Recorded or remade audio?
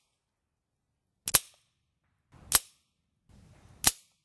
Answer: recorded